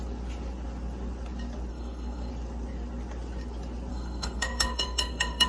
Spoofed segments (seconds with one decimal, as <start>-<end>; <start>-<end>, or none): 1.7-2.3; 3.9-5.5

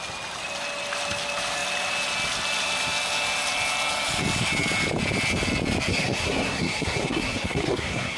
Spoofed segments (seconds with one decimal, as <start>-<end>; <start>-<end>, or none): 5.9-8.2

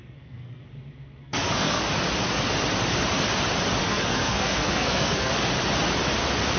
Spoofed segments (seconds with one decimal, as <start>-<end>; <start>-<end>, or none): 0.0-1.9; 3.8-5.3

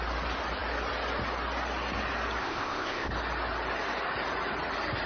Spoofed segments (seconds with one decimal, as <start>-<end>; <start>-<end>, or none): 2.4-3.1